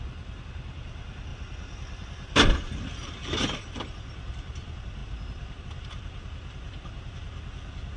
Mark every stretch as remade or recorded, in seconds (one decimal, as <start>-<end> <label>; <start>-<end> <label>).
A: 0.0-8.0 recorded